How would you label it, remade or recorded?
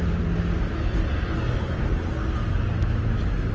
recorded